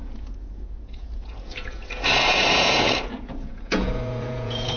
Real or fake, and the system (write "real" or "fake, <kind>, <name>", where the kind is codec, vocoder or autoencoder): fake, vocoder, Vocos